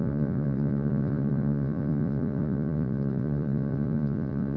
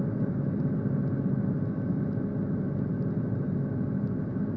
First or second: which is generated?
first